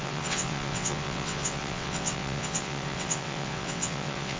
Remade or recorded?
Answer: remade